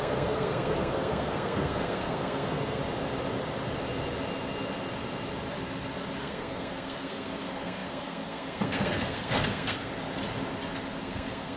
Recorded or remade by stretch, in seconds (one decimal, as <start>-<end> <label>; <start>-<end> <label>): 0.0-2.8 remade; 2.8-6.2 recorded; 6.2-9.9 remade; 9.9-11.0 recorded; 11.0-11.6 remade